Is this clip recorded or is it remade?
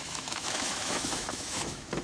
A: remade